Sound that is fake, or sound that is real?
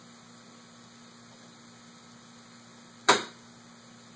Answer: real